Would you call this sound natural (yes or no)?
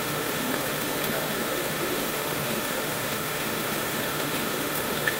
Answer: no